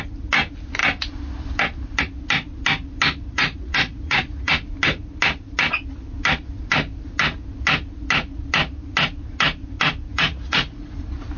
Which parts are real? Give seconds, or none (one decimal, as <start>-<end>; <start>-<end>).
0.0-3.3; 4.5-10.1; 11.0-11.4